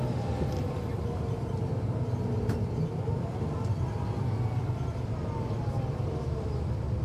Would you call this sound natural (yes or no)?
yes